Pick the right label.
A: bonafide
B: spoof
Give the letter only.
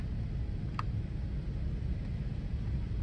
A